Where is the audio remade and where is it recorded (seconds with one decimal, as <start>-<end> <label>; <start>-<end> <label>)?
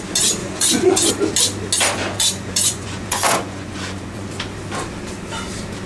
0.0-0.4 recorded; 0.4-1.1 remade; 1.1-2.0 recorded; 2.0-4.3 remade; 4.3-5.9 recorded